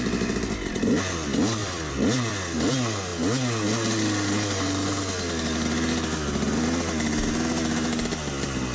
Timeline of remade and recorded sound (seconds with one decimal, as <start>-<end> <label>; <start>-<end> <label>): 0.0-1.6 recorded; 1.6-2.7 remade; 2.7-8.7 recorded